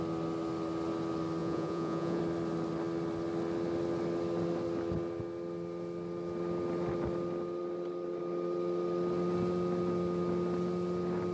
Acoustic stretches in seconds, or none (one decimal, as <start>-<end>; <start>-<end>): 0.0-1.4; 2.2-11.3

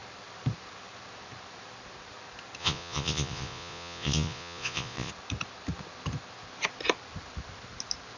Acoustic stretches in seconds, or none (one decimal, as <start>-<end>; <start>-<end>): 0.0-2.6; 5.1-8.2

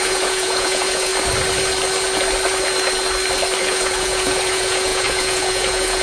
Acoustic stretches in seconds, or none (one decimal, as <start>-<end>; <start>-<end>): 1.1-3.6

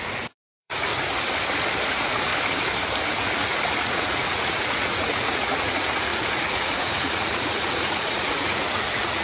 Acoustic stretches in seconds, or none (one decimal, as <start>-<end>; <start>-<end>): 0.9-1.9; 2.3-3.1

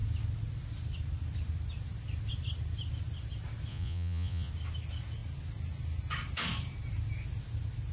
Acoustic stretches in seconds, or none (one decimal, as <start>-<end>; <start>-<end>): 0.0-3.7; 4.5-7.9

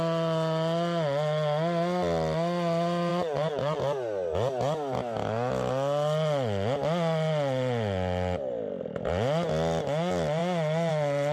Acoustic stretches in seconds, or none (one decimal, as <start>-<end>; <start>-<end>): 0.0-3.1; 3.8-11.3